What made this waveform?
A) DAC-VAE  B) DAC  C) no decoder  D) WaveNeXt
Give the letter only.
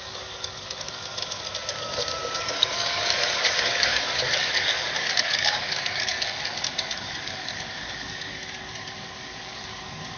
B